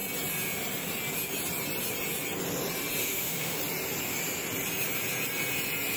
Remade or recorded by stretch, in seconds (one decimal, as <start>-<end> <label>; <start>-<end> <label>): 0.0-3.0 recorded; 3.0-3.6 remade; 3.6-6.0 recorded